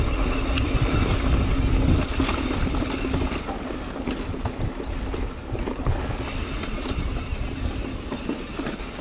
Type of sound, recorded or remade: recorded